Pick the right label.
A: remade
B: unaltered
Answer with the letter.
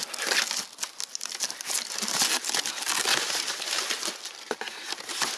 B